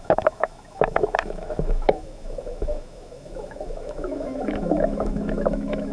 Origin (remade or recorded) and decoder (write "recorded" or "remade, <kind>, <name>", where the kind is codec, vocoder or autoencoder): remade, autoencoder, DAC-VAE